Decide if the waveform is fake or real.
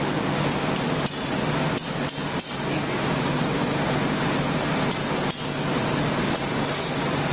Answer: real